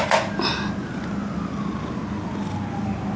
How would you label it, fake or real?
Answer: real